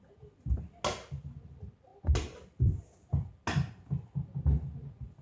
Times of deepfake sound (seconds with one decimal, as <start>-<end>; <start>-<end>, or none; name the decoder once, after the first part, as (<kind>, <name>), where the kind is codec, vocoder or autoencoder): none